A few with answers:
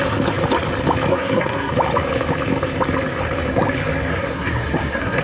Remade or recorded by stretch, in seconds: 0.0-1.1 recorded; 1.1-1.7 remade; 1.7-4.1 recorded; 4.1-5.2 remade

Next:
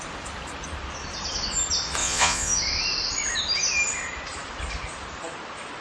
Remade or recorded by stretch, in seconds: 0.0-2.0 recorded; 2.0-2.6 remade; 2.6-5.8 recorded

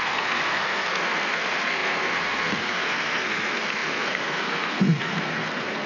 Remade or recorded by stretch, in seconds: 0.0-5.9 remade

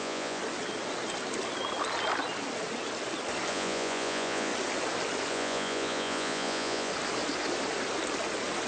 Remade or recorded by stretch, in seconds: 0.0-0.4 remade; 0.4-3.5 recorded; 3.5-4.5 remade; 4.5-5.3 recorded; 5.3-6.9 remade; 6.9-8.7 recorded

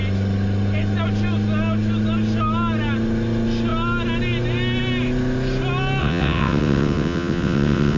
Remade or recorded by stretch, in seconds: 0.0-6.0 recorded; 6.0-8.0 remade